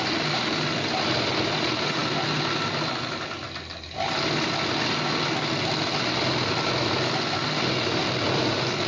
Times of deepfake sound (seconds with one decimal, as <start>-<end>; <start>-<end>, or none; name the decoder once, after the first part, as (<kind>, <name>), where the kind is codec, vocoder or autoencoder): none